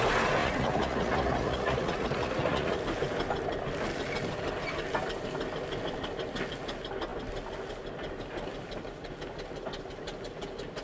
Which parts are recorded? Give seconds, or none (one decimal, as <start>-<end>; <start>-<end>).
0.0-0.4; 2.8-10.8